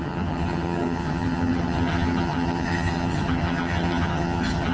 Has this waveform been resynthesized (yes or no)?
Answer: yes